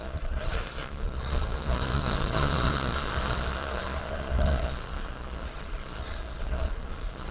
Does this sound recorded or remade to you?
remade